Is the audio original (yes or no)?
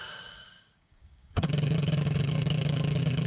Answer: no